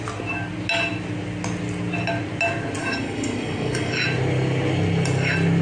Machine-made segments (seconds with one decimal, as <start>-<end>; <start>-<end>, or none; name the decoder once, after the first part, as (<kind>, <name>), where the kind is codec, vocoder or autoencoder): 2.8-3.9 (codec, DAC)